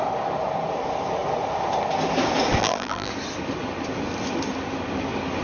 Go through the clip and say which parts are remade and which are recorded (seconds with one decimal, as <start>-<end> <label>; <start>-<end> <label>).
0.0-2.6 recorded; 2.6-3.1 remade; 3.1-5.4 recorded